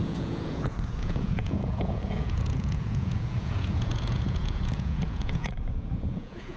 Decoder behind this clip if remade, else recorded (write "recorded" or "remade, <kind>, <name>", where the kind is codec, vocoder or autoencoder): remade, vocoder, Vocos